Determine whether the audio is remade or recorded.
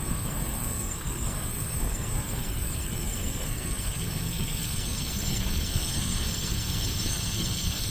remade